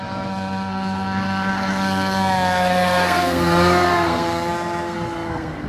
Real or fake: fake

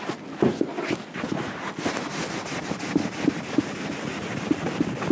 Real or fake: real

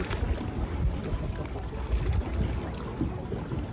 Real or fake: real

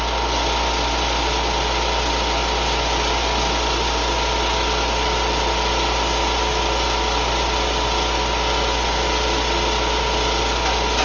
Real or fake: real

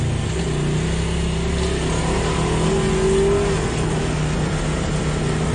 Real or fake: real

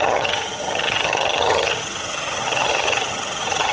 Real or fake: fake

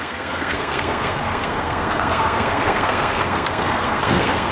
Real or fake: fake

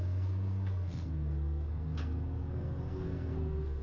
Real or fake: fake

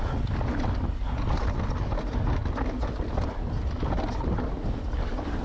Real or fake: real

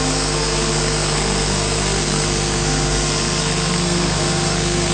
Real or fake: fake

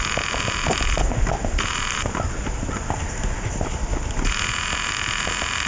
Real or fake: real